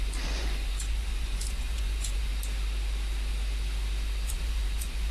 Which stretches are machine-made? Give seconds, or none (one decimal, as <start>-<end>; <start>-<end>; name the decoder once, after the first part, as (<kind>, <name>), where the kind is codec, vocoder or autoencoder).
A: 0.0-2.3 (vocoder, Vocos); 4.3-5.1